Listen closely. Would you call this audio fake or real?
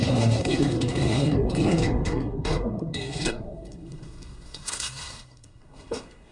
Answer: fake